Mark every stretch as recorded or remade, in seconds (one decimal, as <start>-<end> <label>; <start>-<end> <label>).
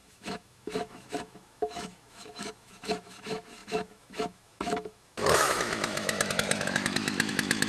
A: 0.0-7.7 remade